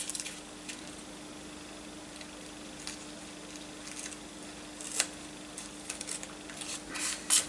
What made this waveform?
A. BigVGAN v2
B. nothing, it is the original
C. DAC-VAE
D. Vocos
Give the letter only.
B